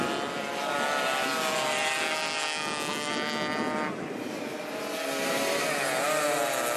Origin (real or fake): real